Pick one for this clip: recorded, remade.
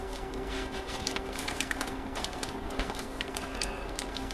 remade